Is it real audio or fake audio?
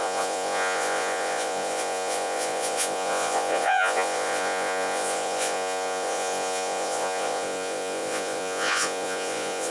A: fake